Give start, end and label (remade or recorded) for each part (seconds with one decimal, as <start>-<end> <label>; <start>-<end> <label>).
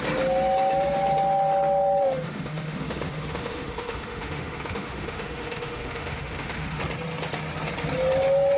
0.0-2.0 recorded; 2.0-6.8 remade; 6.8-8.6 recorded